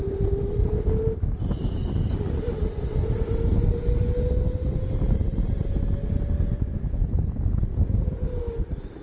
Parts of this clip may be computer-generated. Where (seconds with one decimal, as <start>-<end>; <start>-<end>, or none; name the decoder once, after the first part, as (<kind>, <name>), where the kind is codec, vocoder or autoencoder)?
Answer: 7.7-8.4 (vocoder, Vocos)